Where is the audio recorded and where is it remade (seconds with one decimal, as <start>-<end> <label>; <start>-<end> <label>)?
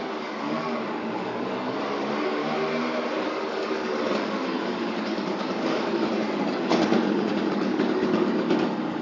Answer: 0.0-2.4 remade; 2.4-3.1 recorded; 3.1-9.0 remade